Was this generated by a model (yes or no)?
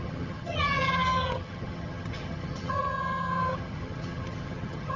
yes